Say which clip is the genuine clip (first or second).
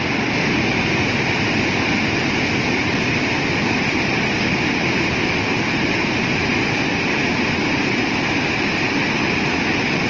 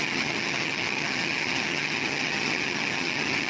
first